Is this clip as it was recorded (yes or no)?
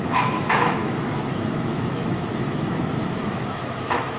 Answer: no